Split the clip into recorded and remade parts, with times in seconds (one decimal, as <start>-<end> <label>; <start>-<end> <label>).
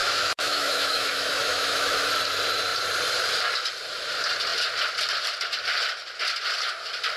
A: 0.0-2.1 remade; 2.1-7.2 recorded